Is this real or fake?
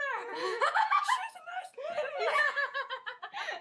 fake